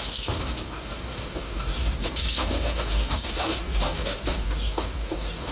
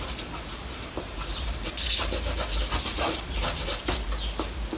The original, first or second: second